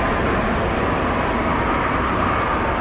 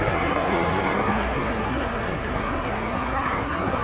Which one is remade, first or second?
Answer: second